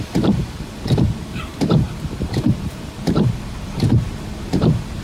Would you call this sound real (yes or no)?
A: no